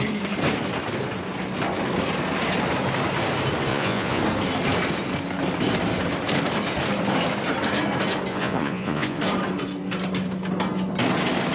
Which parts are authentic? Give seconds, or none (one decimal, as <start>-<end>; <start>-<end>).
0.0-3.7; 4.2-8.3; 9.2-11.5